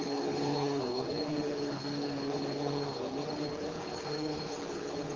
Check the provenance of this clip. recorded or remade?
remade